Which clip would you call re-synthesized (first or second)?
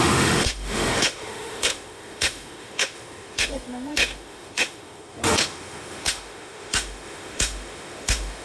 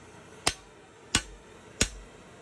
first